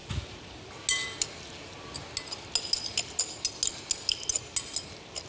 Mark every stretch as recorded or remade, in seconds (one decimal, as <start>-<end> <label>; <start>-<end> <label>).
0.0-5.3 recorded